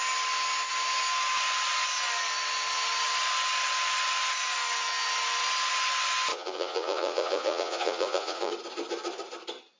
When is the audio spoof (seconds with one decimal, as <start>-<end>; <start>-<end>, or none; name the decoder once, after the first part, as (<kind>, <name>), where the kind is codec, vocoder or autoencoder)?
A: 6.3-8.5 (vocoder, Vocos)